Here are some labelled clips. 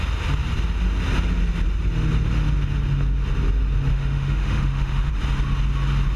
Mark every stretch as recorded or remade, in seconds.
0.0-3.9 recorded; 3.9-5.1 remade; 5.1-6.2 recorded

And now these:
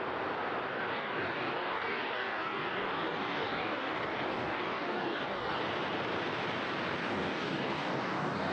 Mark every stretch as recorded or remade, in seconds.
0.0-0.7 recorded; 0.7-5.6 remade; 5.6-7.0 recorded; 7.0-8.5 remade

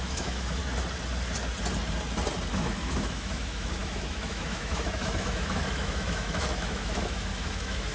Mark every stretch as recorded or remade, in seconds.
0.0-0.6 remade; 0.6-2.5 recorded; 2.5-7.9 remade

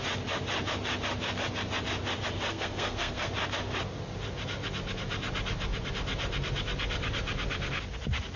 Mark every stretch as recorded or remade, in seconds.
0.0-2.5 recorded; 2.5-3.3 remade; 3.3-8.4 recorded

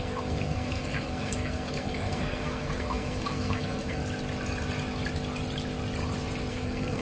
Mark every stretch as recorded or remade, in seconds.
0.0-4.0 remade; 4.0-6.5 recorded; 6.5-7.0 remade